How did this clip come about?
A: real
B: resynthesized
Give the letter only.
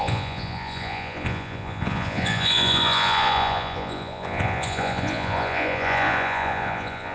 B